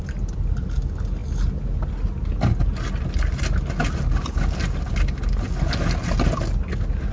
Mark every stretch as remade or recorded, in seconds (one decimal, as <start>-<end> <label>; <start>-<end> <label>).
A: 0.0-7.1 recorded